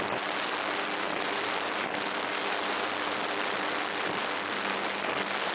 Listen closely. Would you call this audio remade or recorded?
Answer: recorded